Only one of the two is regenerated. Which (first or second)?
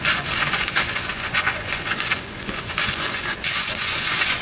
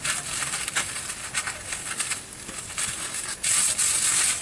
first